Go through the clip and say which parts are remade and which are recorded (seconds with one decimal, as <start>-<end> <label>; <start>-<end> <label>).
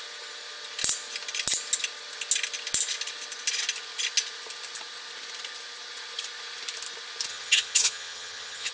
0.0-7.3 recorded; 7.3-8.7 remade